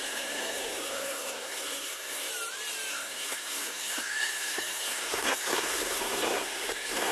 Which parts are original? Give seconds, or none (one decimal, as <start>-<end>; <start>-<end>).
2.3-2.9